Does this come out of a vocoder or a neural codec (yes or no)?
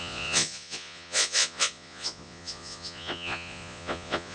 yes